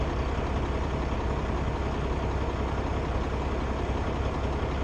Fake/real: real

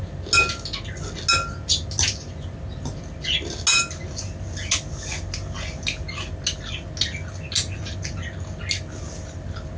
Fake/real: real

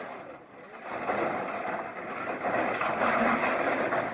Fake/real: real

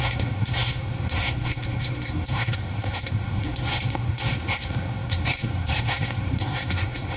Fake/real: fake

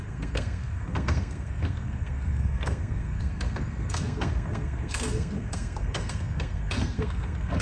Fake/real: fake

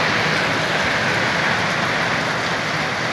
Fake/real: real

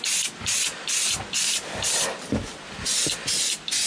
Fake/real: real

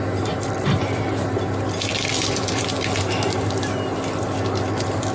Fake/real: real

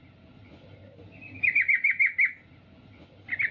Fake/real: real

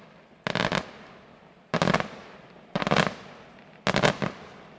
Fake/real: real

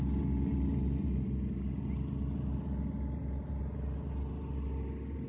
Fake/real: real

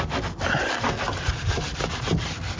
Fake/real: real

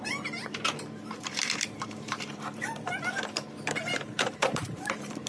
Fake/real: fake